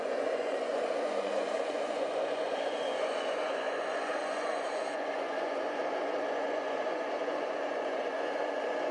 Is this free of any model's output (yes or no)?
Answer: no